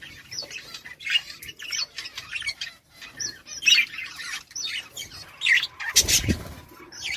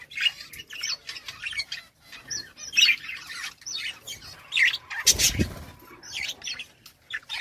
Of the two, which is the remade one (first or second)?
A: first